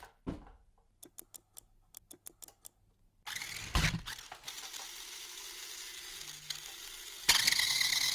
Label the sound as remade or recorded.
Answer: recorded